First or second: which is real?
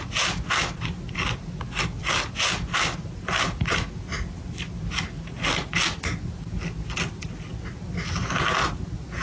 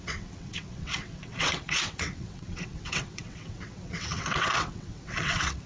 first